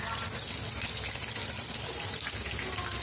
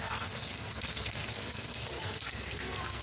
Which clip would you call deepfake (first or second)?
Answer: second